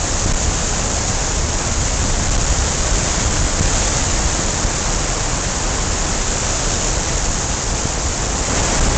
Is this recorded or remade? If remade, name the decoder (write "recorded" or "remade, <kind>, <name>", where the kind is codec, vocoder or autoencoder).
recorded